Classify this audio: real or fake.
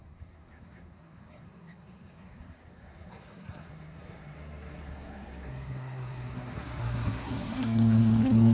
fake